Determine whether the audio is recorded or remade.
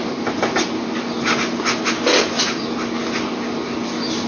recorded